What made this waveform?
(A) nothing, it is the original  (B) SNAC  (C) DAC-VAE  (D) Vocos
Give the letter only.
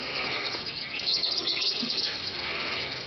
B